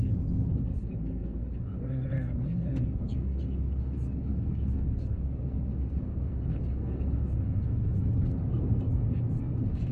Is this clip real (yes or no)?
no